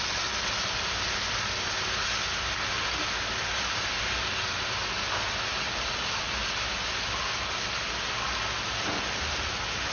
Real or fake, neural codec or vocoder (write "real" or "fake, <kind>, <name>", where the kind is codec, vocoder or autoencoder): real